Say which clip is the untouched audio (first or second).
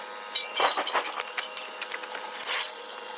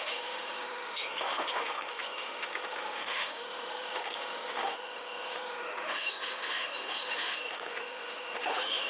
first